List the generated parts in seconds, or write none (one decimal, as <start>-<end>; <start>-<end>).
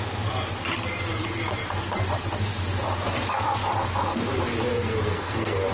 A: 4.7-5.7